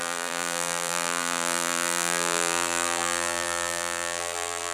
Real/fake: fake